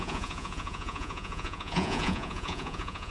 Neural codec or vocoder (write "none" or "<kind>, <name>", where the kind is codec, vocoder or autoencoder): vocoder, Vocos